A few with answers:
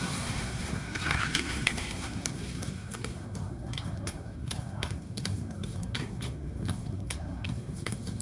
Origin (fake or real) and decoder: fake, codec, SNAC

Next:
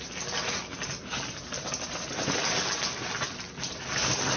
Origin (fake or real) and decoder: real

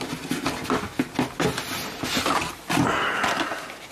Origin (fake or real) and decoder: real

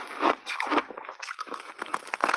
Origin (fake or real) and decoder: real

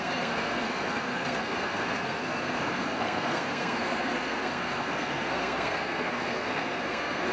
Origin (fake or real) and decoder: fake, codec, SNAC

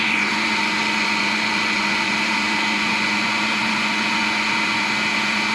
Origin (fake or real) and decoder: fake, vocoder, Vocos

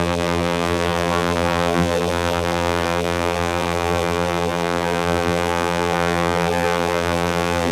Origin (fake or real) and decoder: fake, vocoder, BigVGAN v2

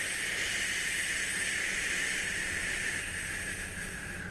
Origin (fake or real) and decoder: real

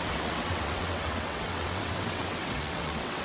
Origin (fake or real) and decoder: fake, vocoder, WaveNeXt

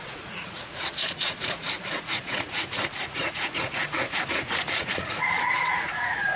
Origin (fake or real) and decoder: fake, vocoder, Vocos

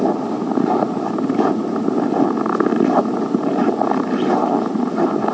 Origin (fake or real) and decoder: fake, vocoder, BigVGAN v2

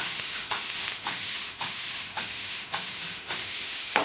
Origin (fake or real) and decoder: fake, autoencoder, DAC-VAE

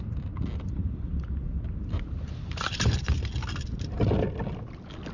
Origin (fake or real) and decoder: real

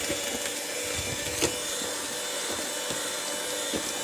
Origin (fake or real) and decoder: real